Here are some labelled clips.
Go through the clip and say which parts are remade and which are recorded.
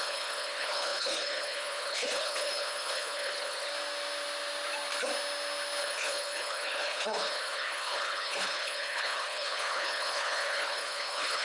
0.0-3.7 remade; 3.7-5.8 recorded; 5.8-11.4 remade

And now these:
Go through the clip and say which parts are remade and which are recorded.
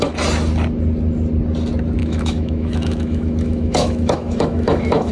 0.0-2.0 recorded; 2.0-5.1 remade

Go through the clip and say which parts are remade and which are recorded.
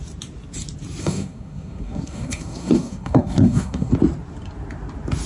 0.0-1.0 recorded; 1.0-3.9 remade; 3.9-5.3 recorded